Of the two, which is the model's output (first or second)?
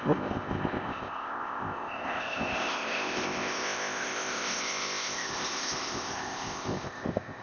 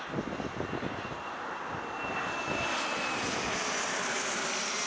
first